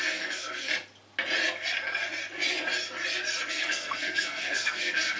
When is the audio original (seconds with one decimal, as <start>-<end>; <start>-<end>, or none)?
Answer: 0.7-3.5